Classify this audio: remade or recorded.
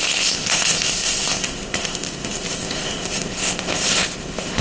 remade